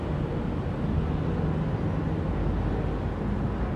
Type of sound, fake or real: real